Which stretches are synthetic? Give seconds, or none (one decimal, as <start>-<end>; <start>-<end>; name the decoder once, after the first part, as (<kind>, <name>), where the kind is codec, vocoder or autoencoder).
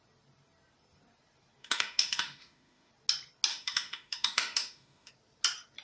1.6-2.9 (autoencoder, DAC-VAE); 3.5-5.1